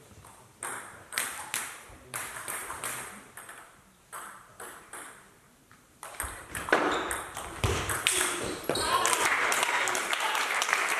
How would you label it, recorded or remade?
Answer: remade